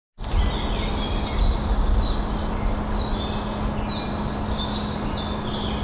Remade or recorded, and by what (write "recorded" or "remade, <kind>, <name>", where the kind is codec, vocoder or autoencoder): recorded